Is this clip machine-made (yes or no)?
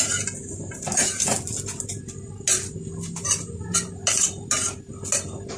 no